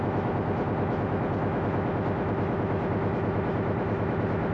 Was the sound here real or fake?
fake